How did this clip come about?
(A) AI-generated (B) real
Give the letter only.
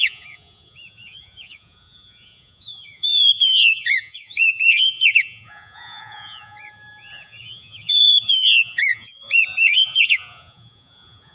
A